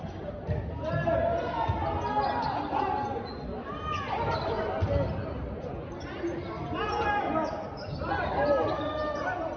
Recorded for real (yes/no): yes